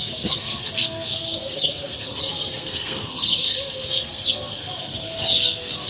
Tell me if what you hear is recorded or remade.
remade